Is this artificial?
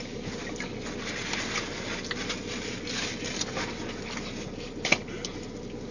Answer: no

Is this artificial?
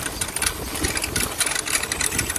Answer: no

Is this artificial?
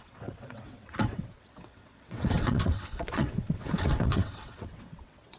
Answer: yes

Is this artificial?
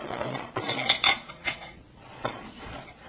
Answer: yes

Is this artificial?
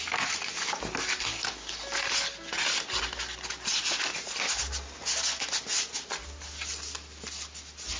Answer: no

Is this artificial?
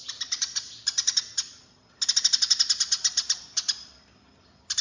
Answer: no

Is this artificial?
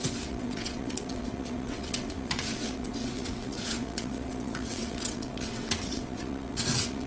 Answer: yes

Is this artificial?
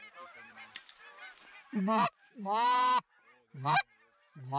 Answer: no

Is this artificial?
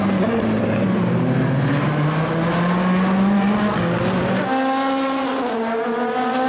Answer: no